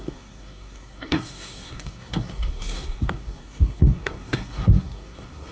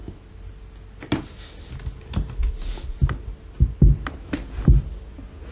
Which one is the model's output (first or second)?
first